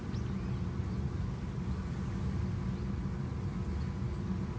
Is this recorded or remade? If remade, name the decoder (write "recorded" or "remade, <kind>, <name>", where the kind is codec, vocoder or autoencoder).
recorded